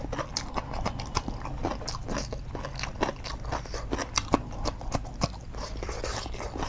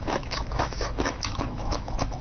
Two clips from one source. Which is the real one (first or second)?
first